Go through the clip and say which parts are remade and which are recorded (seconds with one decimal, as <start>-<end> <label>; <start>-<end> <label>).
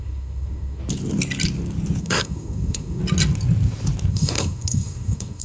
0.0-0.8 remade; 0.8-2.0 recorded; 2.0-3.0 remade; 3.0-4.1 recorded; 4.1-5.4 remade